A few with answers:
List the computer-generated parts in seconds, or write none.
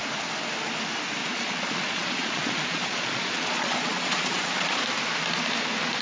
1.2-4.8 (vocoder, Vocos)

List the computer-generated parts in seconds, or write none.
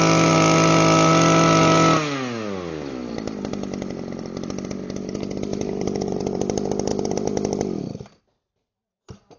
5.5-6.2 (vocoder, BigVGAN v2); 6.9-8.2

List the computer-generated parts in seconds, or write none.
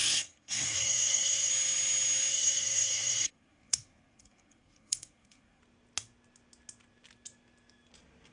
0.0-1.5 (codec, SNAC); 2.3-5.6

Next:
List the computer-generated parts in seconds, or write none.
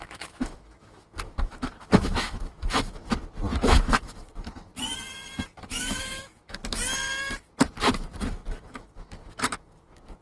0.0-3.0 (autoencoder, DAC-VAE); 3.6-4.7; 5.6-6.6; 8.3-10.2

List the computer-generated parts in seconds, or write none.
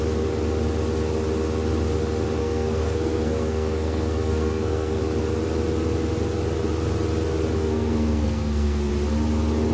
2.4-5.0 (codec, SNAC); 7.6-8.9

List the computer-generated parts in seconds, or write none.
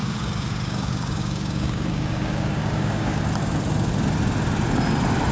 0.0-3.2 (codec, DAC)